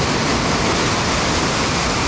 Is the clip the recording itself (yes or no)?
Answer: yes